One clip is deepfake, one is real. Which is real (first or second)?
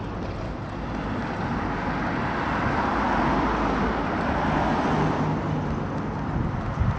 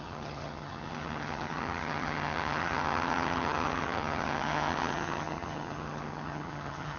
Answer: first